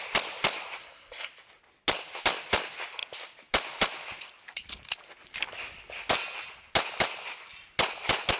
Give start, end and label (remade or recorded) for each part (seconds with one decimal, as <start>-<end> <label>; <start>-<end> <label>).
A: 0.0-0.8 recorded; 0.8-1.3 remade; 1.3-8.4 recorded